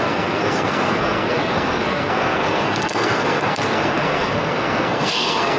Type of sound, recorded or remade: remade